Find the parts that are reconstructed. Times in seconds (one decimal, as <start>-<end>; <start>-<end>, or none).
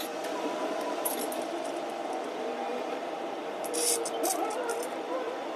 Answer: 0.6-1.1; 2.7-3.7